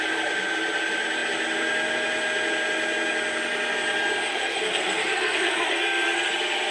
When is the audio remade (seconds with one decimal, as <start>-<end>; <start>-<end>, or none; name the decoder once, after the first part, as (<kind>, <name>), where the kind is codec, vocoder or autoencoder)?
4.3-6.3 (codec, SNAC)